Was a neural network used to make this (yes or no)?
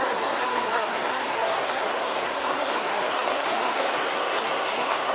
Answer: yes